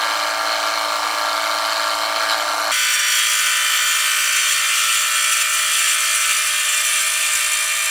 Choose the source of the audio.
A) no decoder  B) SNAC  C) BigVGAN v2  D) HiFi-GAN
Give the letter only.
A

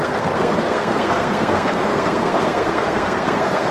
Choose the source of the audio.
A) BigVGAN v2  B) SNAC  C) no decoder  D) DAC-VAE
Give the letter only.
B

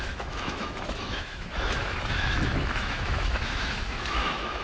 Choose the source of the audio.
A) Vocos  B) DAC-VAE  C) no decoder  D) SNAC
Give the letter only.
B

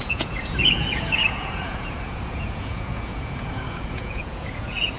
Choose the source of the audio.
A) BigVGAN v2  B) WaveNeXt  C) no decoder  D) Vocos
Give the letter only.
D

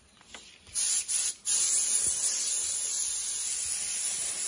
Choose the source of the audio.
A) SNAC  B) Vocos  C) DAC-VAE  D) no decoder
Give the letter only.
D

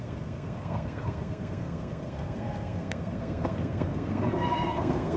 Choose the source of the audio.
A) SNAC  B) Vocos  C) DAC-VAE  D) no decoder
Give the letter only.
A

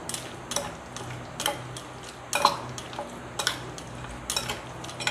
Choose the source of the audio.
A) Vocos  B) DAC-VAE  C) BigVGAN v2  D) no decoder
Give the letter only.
D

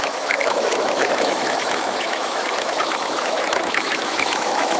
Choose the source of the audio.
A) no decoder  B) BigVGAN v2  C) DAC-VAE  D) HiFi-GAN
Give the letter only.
C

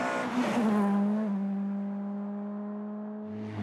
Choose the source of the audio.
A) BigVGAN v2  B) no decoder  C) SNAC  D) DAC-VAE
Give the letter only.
B